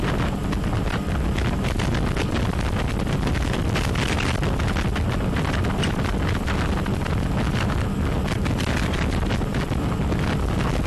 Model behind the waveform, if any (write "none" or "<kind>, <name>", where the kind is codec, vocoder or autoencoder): none